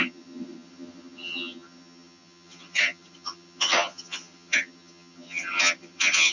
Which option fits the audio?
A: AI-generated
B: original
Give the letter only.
A